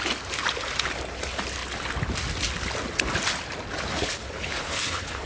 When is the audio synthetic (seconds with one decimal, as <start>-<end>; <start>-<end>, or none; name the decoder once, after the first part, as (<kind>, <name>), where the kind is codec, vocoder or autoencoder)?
3.9-5.3 (codec, HILCodec)